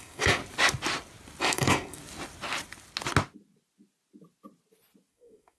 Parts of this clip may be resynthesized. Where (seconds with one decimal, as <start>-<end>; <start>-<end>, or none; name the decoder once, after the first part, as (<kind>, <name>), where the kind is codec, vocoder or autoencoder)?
0.0-0.4 (codec, SNAC); 1.4-2.0; 5.1-5.6

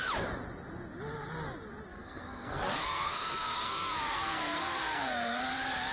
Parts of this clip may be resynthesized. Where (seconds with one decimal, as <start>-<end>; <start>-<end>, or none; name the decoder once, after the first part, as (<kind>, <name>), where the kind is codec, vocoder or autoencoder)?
1.9-5.4 (codec, SNAC)